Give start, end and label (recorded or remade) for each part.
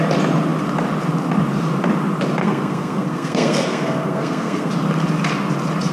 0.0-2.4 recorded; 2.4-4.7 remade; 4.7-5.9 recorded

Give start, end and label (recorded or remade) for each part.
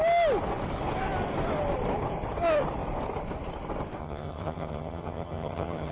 0.0-4.0 recorded; 4.0-5.9 remade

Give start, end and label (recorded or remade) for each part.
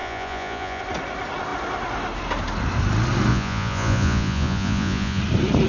0.0-0.8 remade; 0.8-3.3 recorded; 3.3-5.2 remade; 5.2-5.7 recorded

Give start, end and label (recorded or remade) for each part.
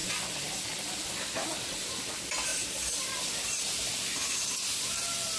0.0-5.4 recorded